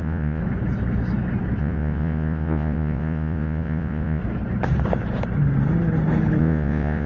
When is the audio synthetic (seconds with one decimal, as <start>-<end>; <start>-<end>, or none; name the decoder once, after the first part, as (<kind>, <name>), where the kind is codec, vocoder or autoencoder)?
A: 0.0-0.4 (vocoder, Vocos); 1.6-4.2; 6.4-7.1